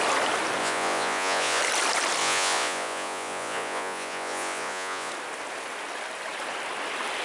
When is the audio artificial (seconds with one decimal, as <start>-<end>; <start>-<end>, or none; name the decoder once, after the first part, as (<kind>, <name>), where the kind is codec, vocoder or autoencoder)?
0.6-1.6 (vocoder, Vocos); 2.2-5.1